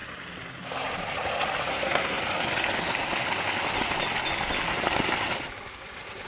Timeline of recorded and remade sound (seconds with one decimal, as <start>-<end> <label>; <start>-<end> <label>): 0.0-1.7 recorded; 1.7-2.2 remade; 2.2-6.3 recorded